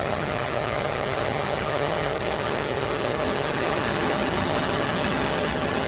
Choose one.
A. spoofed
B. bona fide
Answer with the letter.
A